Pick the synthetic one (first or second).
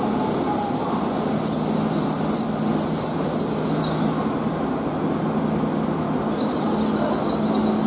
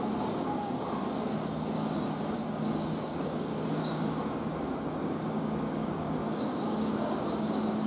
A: second